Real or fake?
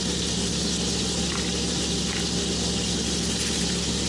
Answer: real